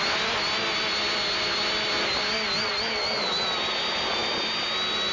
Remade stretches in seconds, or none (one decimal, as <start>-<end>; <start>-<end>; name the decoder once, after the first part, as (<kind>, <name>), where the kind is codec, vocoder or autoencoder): none